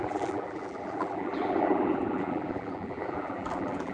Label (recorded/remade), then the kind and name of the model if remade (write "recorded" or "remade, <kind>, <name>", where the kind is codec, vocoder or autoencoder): remade, vocoder, BigVGAN v2